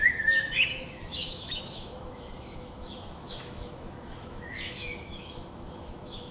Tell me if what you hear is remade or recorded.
remade